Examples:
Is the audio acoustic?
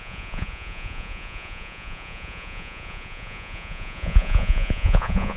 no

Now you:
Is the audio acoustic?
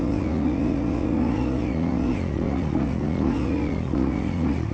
no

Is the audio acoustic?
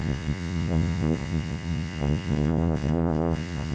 no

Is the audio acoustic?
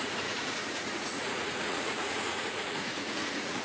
no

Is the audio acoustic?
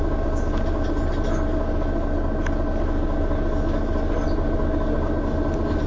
yes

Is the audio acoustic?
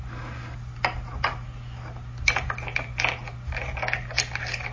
yes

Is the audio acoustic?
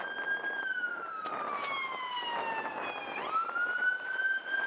yes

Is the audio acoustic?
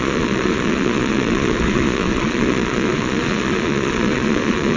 no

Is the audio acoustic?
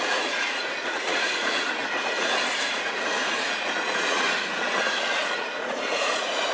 no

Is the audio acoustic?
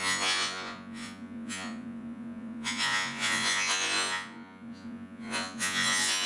no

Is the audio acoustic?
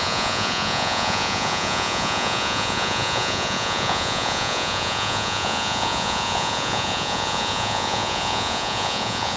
no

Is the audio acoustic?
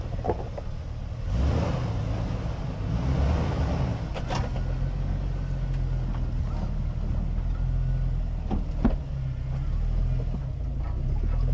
yes